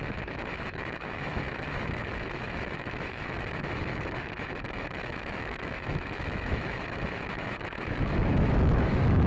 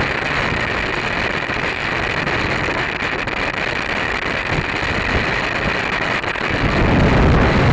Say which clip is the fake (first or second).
first